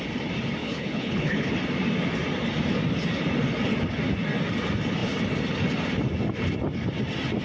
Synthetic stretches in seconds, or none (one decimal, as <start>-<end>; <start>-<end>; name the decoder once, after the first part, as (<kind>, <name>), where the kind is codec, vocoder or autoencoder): 0.6-1.5 (codec, HILCodec)